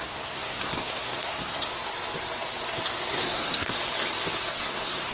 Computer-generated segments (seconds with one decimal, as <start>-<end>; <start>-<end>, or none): 0.0-1.7; 3.1-3.7; 4.5-5.1